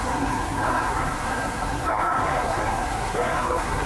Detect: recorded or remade remade